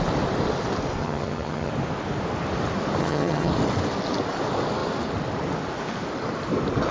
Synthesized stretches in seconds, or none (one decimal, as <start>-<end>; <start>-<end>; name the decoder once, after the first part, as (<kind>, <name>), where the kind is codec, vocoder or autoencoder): 1.0-1.7 (vocoder, HiFi-GAN); 3.0-3.5